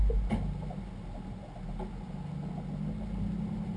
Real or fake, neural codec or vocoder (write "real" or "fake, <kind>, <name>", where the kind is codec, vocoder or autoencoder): real